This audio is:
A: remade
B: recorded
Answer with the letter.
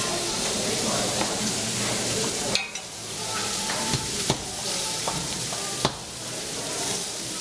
A